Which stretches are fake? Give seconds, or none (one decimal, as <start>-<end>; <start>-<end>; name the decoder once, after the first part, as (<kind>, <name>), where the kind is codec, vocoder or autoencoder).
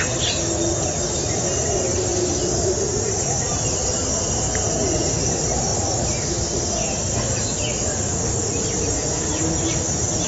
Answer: none